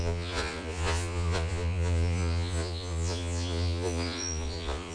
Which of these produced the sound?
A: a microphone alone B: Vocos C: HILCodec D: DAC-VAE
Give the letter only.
B